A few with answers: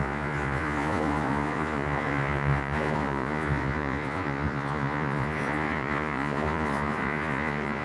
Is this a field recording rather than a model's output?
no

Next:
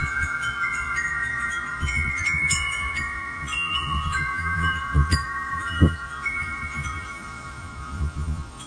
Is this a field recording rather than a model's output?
no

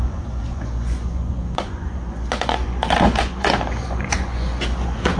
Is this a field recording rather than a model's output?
no